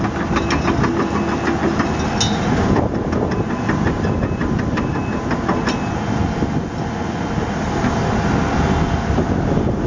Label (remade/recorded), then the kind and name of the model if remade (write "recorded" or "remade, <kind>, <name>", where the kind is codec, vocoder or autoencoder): recorded